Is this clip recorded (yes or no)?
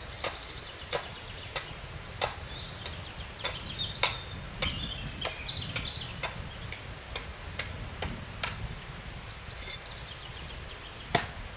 yes